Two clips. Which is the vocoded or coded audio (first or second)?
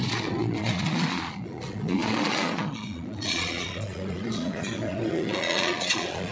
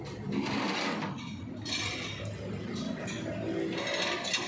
first